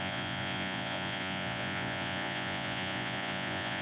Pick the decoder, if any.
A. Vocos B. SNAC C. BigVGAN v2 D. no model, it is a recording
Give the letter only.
A